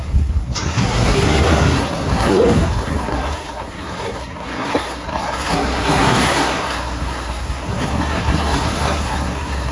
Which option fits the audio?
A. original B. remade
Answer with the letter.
B